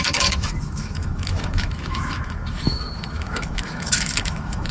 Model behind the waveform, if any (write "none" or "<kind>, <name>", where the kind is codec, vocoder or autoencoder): autoencoder, DAC-VAE